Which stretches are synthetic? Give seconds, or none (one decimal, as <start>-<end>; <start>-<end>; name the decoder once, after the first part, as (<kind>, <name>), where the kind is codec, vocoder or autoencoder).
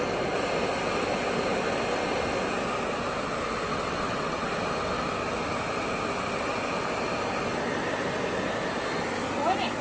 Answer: 3.7-4.5 (vocoder, WaveNeXt)